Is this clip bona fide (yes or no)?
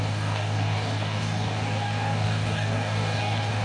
no